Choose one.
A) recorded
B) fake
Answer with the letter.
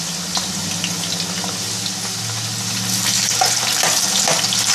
A